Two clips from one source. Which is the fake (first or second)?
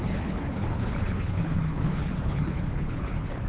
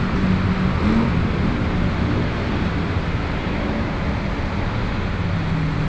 first